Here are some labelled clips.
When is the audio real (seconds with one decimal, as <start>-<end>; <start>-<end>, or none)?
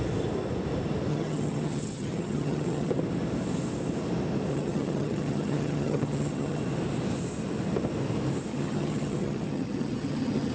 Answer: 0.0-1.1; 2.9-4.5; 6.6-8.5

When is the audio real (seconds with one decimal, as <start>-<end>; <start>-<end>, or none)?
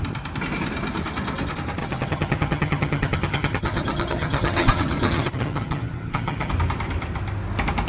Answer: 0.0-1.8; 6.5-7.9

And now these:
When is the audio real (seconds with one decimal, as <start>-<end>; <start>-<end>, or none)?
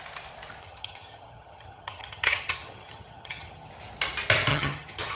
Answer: 0.0-0.6; 3.7-4.5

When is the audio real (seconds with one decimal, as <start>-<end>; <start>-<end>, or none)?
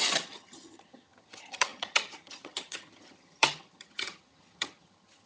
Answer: none